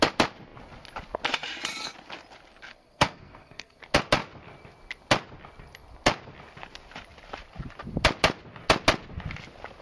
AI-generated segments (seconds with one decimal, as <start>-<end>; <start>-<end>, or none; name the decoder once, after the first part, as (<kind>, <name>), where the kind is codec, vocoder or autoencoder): 2.7-3.8 (codec, SNAC)